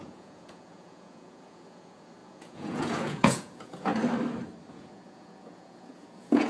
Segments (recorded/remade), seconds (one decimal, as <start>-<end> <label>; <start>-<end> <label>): 0.0-3.9 remade; 3.9-4.7 recorded; 4.7-6.5 remade